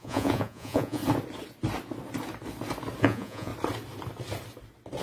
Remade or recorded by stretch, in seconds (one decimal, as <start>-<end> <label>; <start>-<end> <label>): 0.0-1.0 remade; 1.0-3.0 recorded; 3.0-3.5 remade; 3.5-5.0 recorded